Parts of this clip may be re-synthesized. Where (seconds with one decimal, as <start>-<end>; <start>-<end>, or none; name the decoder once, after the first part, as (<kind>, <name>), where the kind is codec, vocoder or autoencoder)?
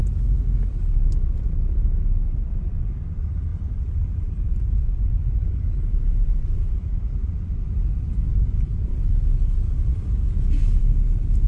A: 3.5-7.5 (vocoder, BigVGAN v2); 8.3-8.9